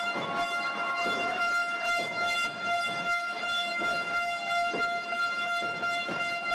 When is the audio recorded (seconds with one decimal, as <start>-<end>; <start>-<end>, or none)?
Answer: none